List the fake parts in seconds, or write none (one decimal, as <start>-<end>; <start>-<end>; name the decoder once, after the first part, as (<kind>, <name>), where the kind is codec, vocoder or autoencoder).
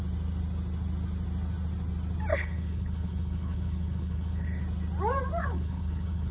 2.3-4.6 (codec, HILCodec); 5.4-6.3